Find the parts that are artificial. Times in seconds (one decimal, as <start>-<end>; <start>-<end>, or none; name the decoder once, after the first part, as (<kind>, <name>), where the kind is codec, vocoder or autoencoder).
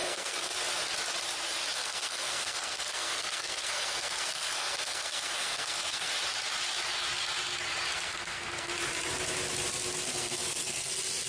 0.0-0.5 (codec, SNAC); 1.8-6.1; 7.9-8.7; 10.1-10.9